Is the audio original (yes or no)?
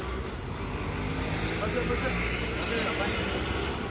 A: yes